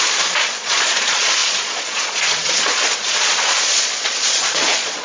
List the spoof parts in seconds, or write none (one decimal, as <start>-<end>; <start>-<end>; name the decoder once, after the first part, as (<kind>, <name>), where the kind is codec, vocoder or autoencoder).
0.0-5.0 (vocoder, Vocos)